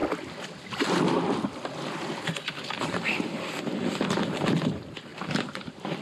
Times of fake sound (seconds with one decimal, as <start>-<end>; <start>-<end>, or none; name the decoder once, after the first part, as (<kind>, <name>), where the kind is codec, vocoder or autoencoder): 5.1-6.0 (vocoder, BigVGAN v2)